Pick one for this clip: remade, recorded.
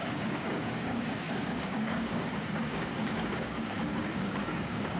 remade